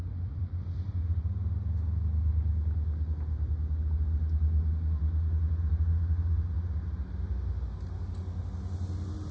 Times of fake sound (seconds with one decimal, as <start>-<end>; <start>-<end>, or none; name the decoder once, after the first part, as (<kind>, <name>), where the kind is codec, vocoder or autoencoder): 0.0-1.2 (vocoder, BigVGAN v2)